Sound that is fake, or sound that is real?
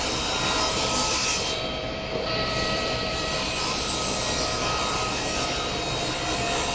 fake